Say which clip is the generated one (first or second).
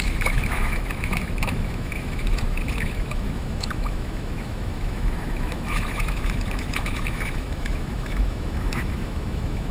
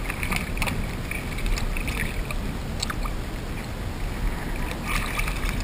first